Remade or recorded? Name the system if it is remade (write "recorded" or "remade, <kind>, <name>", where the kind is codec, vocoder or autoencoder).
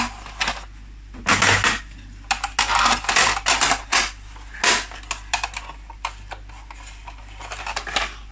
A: recorded